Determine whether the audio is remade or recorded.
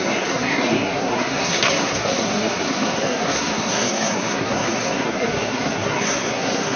remade